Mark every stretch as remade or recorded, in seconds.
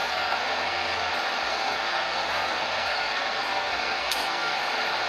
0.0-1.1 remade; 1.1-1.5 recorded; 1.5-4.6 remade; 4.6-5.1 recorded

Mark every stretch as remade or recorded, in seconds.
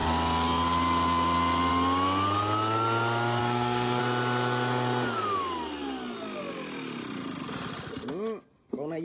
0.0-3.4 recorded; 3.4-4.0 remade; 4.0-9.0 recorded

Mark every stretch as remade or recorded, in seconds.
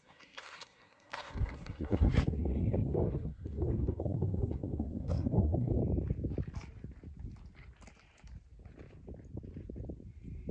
0.0-5.8 remade; 5.8-10.5 recorded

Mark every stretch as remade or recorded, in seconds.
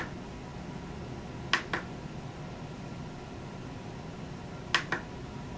0.0-5.6 recorded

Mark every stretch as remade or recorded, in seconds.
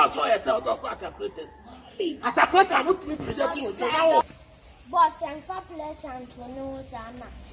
0.0-1.7 recorded; 1.7-2.9 remade; 2.9-7.5 recorded